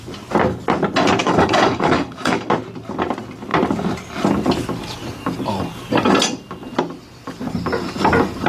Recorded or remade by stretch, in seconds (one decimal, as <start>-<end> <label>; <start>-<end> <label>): 0.0-1.2 recorded; 1.2-2.5 remade; 2.5-8.5 recorded